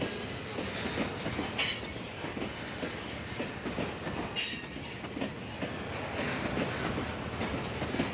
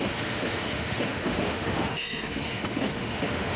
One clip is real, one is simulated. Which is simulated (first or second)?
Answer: second